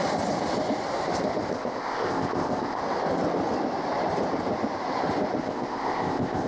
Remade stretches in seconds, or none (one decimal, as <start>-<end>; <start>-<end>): 1.5-2.8; 5.4-6.5